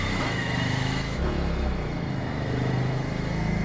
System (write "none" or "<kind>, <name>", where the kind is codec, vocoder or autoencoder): autoencoder, DAC-VAE